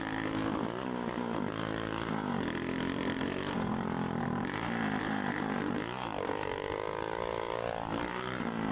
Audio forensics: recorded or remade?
remade